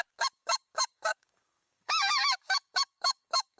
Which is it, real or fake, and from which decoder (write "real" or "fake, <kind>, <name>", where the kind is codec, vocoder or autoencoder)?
fake, codec, DAC